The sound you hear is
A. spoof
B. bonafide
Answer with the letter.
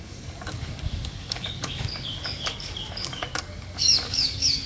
A